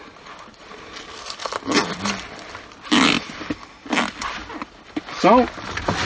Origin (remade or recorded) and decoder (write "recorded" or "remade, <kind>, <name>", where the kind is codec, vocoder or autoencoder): recorded